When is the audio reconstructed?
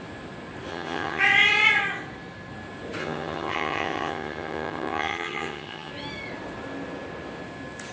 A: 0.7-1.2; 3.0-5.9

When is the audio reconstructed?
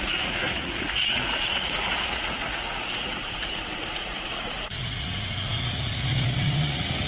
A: 0.0-7.1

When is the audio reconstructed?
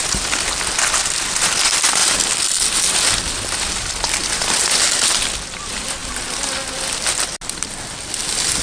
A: none